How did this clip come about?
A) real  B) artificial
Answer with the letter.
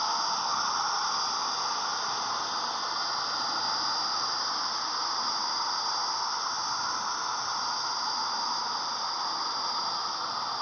A